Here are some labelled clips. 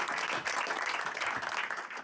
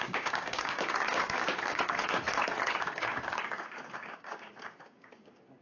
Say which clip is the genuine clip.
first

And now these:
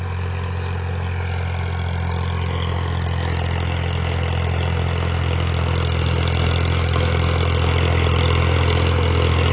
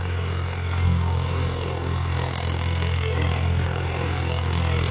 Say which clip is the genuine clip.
first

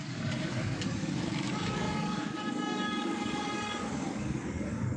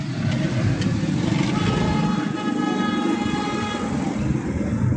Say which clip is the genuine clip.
second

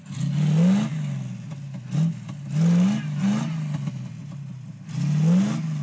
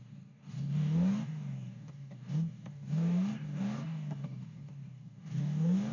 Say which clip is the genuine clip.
first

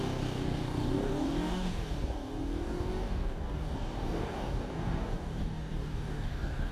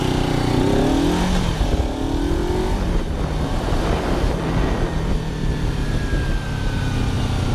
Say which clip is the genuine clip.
second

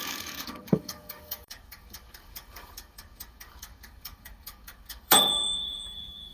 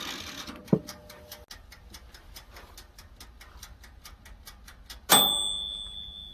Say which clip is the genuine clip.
second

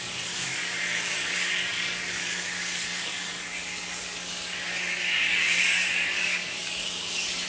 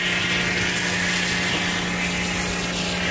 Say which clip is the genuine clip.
second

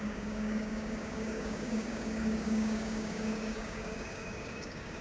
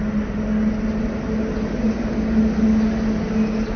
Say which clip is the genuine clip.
second